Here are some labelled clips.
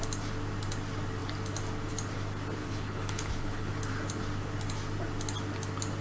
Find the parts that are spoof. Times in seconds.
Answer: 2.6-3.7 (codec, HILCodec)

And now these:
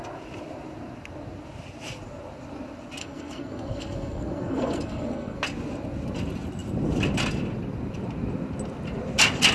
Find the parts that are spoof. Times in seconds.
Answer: 3.0-5.4 (codec, SNAC)

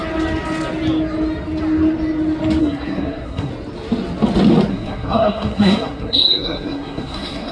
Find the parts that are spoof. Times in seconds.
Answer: 2.6-3.5 (codec, SNAC); 4.7-7.5

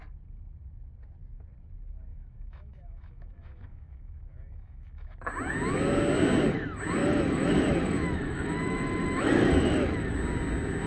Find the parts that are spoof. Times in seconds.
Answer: 2.1-5.3 (autoencoder, DAC-VAE); 7.0-10.1

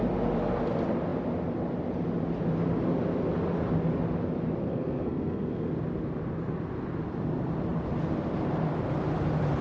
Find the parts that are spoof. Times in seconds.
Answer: 4.6-5.7 (codec, SNAC)